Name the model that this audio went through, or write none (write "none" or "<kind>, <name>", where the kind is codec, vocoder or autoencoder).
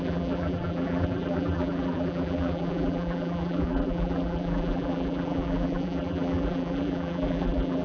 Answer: vocoder, BigVGAN v2